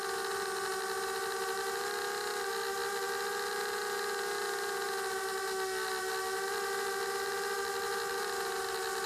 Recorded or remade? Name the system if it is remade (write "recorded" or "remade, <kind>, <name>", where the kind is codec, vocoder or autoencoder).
recorded